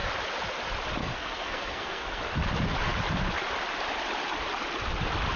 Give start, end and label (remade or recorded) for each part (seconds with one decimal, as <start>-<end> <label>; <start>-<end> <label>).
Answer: 0.0-1.0 recorded; 1.0-2.2 remade; 2.2-5.4 recorded